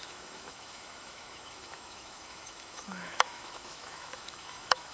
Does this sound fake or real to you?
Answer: fake